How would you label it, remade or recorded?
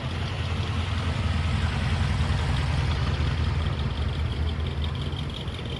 recorded